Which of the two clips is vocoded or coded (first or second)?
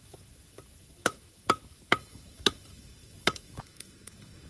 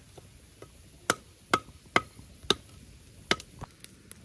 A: first